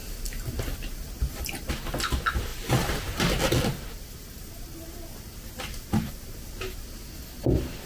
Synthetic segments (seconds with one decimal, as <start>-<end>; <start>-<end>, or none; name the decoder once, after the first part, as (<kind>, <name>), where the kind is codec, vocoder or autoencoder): none